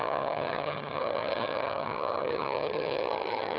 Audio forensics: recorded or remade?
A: remade